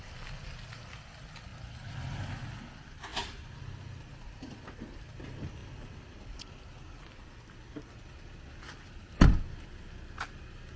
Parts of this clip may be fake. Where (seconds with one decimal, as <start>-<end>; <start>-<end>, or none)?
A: none